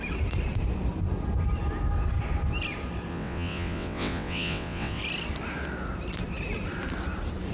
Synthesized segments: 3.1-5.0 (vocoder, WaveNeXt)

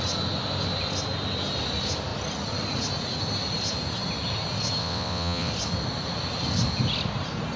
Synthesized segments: 4.8-5.5 (vocoder, WaveNeXt)

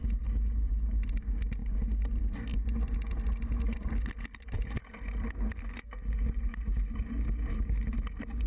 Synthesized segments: none

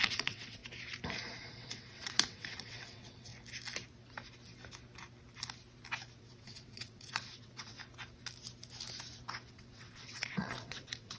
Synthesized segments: 0.0-0.6 (vocoder, WaveNeXt); 1.5-3.3; 6.2-7.8; 9.5-11.2

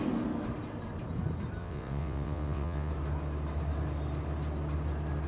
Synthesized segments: 1.6-2.9 (vocoder, WaveNeXt)